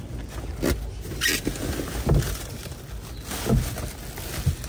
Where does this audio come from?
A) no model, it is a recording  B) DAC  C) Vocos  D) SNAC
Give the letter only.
A